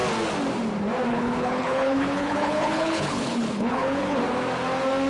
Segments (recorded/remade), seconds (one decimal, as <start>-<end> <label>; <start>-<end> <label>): 0.0-1.1 recorded; 1.1-4.2 remade; 4.2-5.1 recorded